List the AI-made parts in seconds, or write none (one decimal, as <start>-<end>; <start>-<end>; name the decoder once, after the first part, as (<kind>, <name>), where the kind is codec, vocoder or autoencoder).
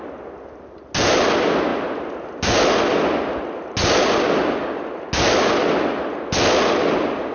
none